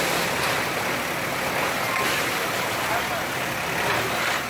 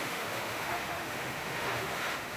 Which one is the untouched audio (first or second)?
first